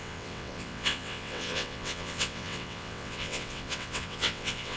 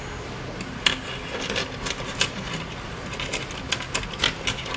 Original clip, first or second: second